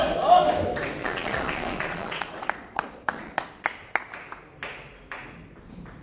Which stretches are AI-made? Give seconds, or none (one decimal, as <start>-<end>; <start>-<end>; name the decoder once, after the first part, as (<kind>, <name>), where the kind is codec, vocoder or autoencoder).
1.0-3.5 (vocoder, Vocos)

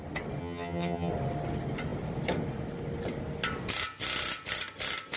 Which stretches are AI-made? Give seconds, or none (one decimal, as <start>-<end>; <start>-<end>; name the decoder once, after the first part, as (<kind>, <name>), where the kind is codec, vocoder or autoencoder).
0.4-1.1 (vocoder, HiFi-GAN)